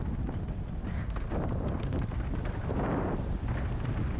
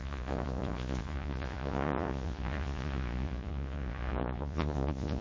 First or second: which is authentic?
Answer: first